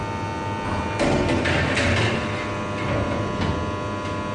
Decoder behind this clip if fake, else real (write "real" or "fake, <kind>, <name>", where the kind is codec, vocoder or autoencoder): real